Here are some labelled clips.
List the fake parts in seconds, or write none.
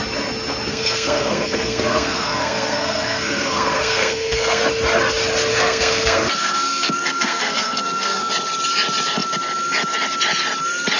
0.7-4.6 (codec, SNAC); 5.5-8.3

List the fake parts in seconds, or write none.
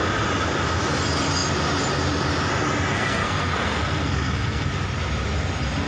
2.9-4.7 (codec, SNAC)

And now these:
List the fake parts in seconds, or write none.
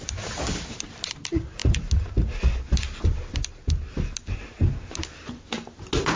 none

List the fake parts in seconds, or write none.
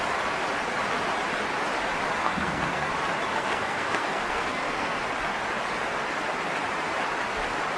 2.2-2.9 (codec, SNAC); 3.3-5.0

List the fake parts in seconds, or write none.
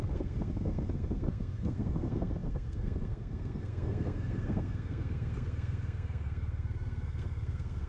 0.0-7.9 (codec, SNAC)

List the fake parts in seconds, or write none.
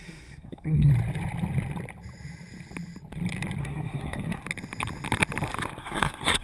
0.0-0.9 (codec, SNAC); 3.6-4.4; 5.8-6.4